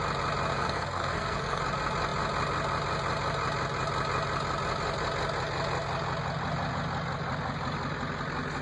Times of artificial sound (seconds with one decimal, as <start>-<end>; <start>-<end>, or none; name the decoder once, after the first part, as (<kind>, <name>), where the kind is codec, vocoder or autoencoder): 0.5-1.6 (codec, SNAC)